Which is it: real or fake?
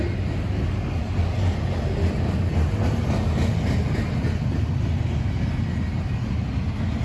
real